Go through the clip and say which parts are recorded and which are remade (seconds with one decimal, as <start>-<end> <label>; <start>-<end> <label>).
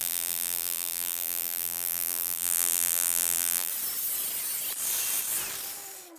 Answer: 0.0-3.7 remade; 3.7-6.2 recorded